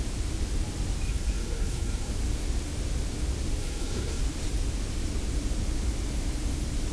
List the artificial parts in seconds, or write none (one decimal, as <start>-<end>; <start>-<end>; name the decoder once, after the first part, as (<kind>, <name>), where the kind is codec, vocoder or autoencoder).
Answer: 1.1-2.1 (codec, SNAC); 3.6-4.2